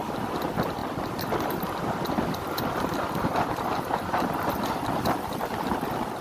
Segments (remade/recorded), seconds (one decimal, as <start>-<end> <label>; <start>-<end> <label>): 0.0-6.2 recorded